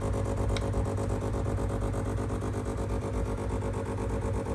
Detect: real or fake real